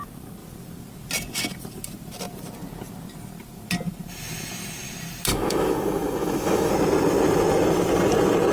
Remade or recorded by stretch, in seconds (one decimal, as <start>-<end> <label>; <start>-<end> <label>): 0.0-5.3 recorded; 5.3-6.7 remade; 6.7-8.5 recorded